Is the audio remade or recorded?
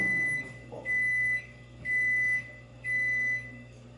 remade